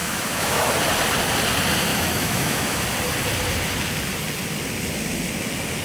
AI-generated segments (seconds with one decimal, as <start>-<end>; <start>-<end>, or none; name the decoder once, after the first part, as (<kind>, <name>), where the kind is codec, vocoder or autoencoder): 0.0-0.7 (autoencoder, DAC-VAE); 1.9-2.8